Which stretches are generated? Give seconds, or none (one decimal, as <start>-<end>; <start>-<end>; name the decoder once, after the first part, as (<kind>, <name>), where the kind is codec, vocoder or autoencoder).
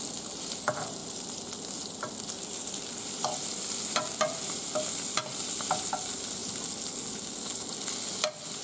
none